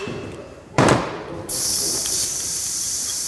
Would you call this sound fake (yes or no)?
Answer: yes